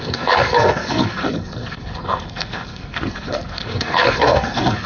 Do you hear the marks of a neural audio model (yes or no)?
yes